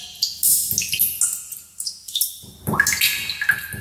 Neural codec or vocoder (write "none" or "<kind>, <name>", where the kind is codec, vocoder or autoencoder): none